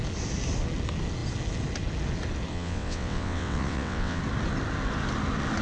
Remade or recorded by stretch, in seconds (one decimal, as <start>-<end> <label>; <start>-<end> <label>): 0.0-2.5 recorded; 2.5-4.2 remade; 4.2-5.6 recorded